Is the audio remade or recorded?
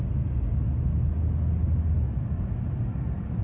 recorded